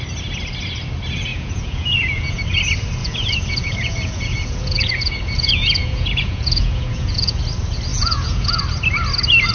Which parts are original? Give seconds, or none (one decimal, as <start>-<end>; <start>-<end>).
0.0-1.3; 2.4-3.0; 7.4-7.9; 8.6-9.5